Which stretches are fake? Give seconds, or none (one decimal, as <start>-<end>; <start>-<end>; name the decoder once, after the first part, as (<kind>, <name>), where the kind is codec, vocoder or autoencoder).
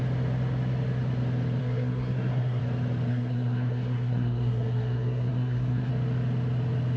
1.6-2.6 (codec, SNAC); 3.1-5.9